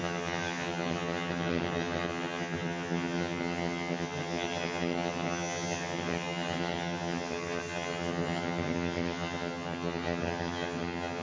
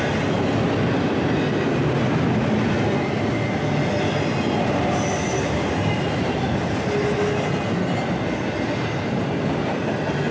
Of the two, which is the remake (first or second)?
first